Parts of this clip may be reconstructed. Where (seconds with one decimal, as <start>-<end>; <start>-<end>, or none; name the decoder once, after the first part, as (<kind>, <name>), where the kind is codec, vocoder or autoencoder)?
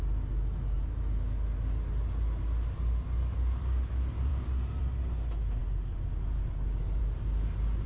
none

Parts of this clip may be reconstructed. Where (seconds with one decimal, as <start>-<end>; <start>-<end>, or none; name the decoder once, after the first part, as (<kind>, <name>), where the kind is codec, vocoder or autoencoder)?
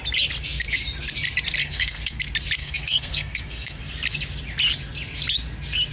1.6-2.2 (codec, SNAC); 2.6-3.8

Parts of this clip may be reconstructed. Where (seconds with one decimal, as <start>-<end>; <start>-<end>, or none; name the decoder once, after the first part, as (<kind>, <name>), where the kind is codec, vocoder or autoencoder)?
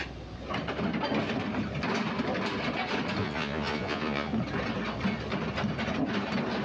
3.2-4.3 (vocoder, Vocos)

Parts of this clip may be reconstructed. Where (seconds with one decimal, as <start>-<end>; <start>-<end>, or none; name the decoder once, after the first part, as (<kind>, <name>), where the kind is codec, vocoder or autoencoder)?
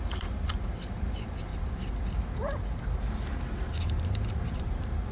0.0-1.5 (vocoder, BigVGAN v2); 4.6-5.1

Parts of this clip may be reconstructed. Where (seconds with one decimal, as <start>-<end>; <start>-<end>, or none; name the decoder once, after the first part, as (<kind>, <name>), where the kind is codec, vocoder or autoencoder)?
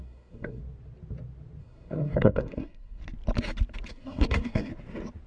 0.0-0.6 (codec, SNAC); 1.6-3.0; 3.9-4.7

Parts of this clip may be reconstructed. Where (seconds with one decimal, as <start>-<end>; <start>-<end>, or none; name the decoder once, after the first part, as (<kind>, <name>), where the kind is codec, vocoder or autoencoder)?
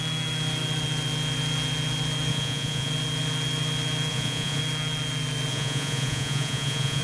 2.3-2.9 (vocoder, Vocos); 4.1-4.6; 5.5-7.0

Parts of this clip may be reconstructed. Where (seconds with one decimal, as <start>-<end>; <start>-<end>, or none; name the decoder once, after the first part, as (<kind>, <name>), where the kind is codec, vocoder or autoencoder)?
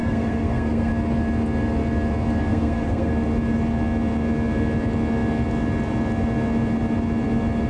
0.0-0.9 (codec, SNAC); 2.5-3.1